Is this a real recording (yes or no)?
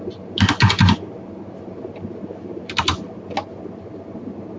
yes